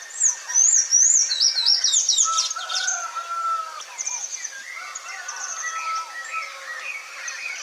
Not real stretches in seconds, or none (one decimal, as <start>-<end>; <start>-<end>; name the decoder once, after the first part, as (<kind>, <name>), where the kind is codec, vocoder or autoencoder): none